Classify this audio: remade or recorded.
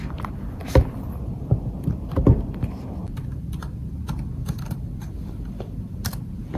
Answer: remade